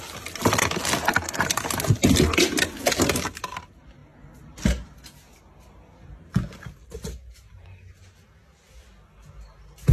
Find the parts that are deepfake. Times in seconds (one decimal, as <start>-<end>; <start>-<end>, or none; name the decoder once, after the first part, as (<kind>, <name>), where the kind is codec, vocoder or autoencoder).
none